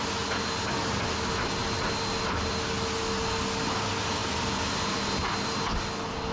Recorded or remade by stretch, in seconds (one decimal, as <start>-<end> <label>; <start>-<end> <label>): 0.0-6.3 recorded